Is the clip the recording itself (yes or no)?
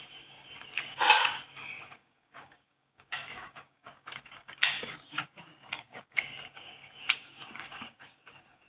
no